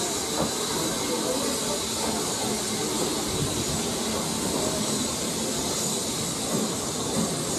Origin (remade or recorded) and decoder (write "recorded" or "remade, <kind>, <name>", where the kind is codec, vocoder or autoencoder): recorded